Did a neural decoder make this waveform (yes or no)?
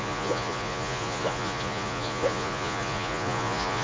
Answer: yes